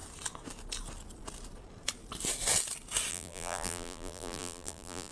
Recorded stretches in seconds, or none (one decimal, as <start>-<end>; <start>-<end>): 0.0-3.1